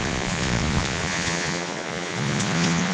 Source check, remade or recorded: remade